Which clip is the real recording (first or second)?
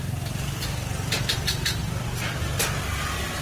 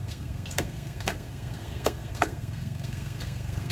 first